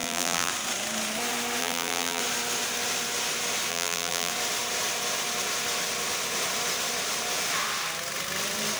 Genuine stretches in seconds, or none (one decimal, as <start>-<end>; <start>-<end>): 0.5-1.6; 2.2-3.7; 4.3-8.8